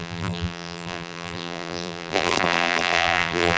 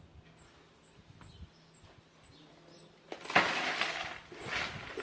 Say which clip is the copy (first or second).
first